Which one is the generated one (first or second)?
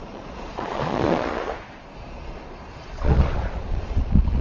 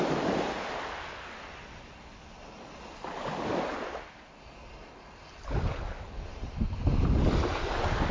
first